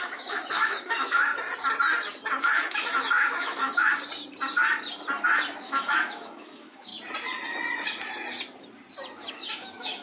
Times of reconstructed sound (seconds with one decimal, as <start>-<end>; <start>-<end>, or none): 0.0-1.3; 2.4-3.9; 5.6-6.9; 9.3-10.0